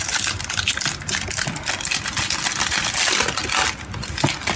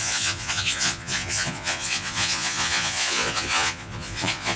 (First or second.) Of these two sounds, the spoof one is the second